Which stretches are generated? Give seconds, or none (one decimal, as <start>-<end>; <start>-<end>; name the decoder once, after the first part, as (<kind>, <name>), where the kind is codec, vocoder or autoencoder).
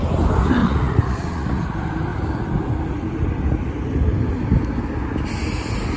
0.6-1.6 (vocoder, Vocos)